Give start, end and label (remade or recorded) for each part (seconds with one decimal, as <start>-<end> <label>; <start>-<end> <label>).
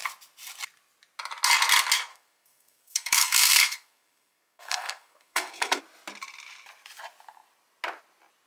0.0-2.1 recorded; 2.1-5.8 remade; 5.8-8.5 recorded